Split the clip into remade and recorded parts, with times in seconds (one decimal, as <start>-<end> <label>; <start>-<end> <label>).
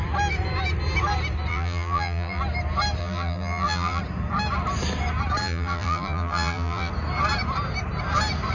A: 0.0-1.5 recorded; 1.5-2.4 remade; 2.4-3.0 recorded; 3.0-4.0 remade; 4.0-5.4 recorded; 5.4-6.9 remade; 6.9-8.5 recorded